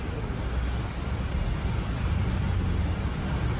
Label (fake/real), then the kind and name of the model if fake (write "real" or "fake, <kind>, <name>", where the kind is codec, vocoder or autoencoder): real